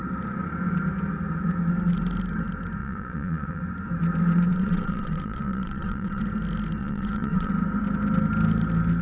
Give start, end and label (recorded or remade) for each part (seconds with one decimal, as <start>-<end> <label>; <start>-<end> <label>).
0.0-2.8 recorded; 2.8-3.6 remade; 3.6-4.5 recorded; 4.5-6.2 remade; 6.2-6.8 recorded; 6.8-7.5 remade; 7.5-9.0 recorded